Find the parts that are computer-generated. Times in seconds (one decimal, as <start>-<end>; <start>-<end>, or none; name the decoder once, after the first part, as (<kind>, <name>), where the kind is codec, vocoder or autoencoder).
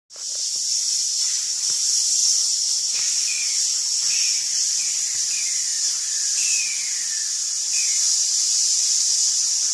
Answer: none